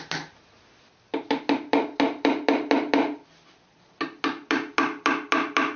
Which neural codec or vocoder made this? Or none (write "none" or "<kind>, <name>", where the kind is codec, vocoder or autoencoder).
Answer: none